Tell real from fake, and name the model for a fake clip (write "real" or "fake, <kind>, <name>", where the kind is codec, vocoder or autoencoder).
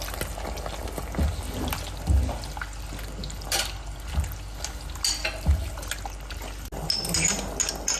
real